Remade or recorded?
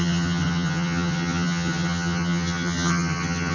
remade